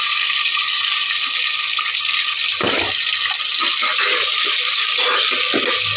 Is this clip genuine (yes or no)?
yes